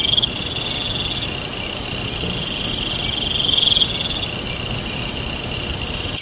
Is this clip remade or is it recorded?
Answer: recorded